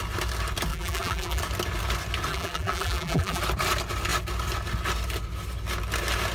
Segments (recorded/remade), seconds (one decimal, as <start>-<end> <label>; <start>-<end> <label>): 0.0-0.7 recorded; 0.7-1.4 remade; 1.4-2.3 recorded; 2.3-3.4 remade; 3.4-6.3 recorded